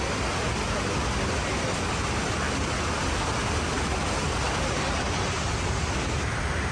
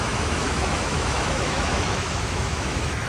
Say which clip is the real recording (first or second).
first